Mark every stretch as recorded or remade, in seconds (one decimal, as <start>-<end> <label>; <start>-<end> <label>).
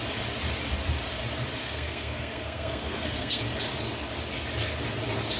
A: 0.0-1.6 recorded; 1.6-3.4 remade; 3.4-5.4 recorded